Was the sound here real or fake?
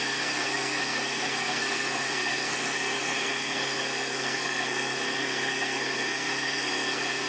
fake